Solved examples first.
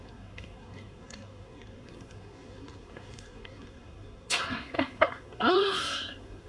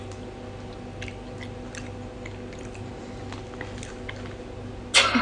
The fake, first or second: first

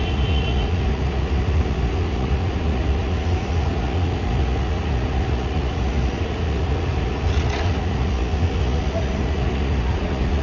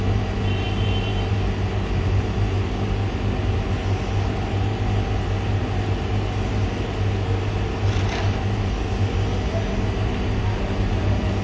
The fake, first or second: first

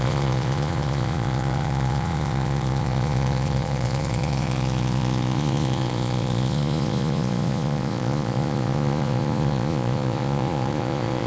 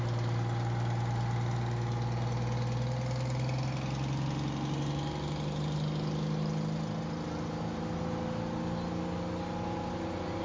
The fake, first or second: first